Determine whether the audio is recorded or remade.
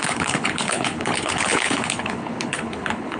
remade